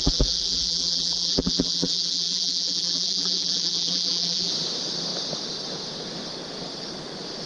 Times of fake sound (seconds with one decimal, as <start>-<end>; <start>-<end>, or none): 0.0-4.5